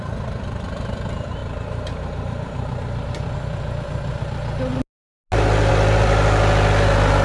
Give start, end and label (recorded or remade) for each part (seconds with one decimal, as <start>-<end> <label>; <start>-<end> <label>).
0.0-7.2 recorded